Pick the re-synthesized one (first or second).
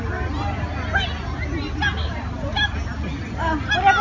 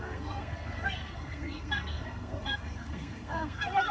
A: second